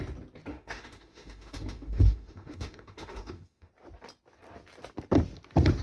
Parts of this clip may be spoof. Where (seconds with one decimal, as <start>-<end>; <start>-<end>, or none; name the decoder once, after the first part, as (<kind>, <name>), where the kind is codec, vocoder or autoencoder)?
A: 0.5-3.7 (autoencoder, DAC-VAE)